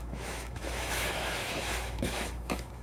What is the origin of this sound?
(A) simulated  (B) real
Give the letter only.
A